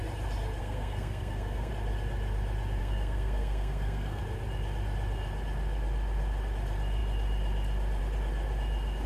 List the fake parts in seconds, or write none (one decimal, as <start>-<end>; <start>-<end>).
0.6-1.7; 2.8-4.2